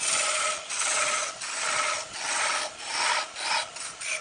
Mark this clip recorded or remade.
recorded